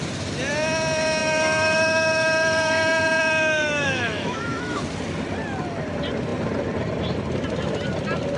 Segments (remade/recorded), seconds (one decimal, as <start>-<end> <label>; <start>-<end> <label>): 0.0-1.2 recorded; 1.2-4.8 remade; 4.8-8.4 recorded